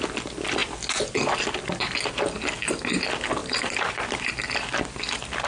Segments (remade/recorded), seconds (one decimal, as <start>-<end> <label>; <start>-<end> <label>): 0.0-3.4 recorded; 3.4-4.3 remade; 4.3-5.5 recorded